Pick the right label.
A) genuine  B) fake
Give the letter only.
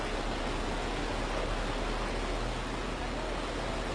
A